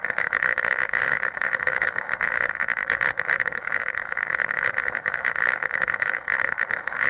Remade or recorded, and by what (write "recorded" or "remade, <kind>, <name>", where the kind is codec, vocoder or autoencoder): remade, autoencoder, DAC-VAE